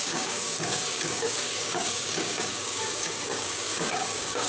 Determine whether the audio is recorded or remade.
remade